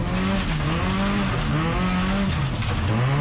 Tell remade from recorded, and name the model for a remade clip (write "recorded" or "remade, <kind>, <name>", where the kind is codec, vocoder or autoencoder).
recorded